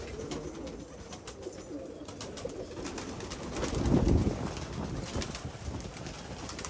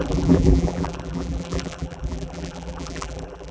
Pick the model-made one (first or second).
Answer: second